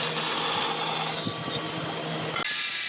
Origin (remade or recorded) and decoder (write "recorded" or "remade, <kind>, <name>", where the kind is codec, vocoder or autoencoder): recorded